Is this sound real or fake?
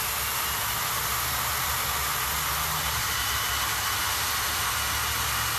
real